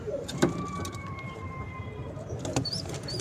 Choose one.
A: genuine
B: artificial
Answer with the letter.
B